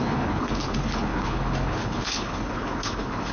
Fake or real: fake